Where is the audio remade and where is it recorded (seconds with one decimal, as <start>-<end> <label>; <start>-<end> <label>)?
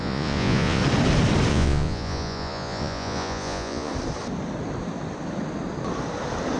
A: 0.0-0.8 remade; 0.8-1.5 recorded; 1.5-3.9 remade; 3.9-6.6 recorded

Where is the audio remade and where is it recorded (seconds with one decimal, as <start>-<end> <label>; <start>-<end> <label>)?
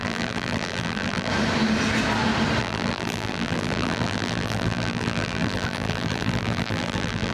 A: 0.0-1.3 remade; 1.3-2.6 recorded; 2.6-7.3 remade